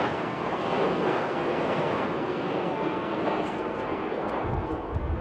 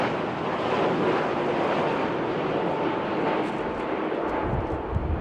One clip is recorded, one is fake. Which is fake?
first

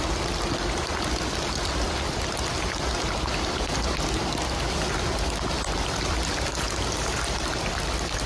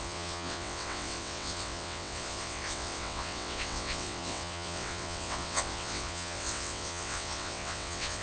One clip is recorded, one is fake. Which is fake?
second